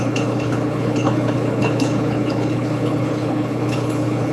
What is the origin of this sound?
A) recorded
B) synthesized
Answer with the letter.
B